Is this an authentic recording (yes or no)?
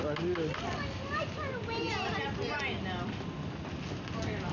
yes